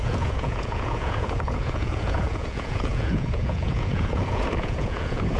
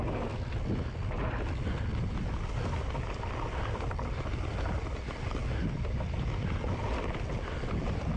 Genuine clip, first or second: second